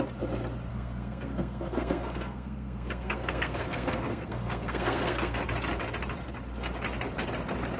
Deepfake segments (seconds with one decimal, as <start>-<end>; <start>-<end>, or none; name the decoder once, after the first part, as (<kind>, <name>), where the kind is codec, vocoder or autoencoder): 0.7-5.4 (codec, SNAC)